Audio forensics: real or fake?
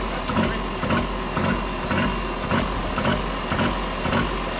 real